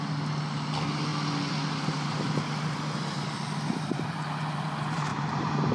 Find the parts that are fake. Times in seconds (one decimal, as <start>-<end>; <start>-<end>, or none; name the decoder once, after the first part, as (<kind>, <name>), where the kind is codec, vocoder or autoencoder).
5.1-5.7 (vocoder, BigVGAN v2)